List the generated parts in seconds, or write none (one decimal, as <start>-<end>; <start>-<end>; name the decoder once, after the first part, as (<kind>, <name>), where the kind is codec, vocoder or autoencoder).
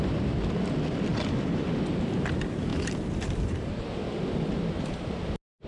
none